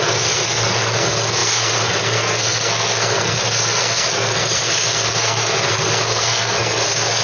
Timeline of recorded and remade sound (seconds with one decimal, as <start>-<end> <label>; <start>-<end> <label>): 0.0-7.2 remade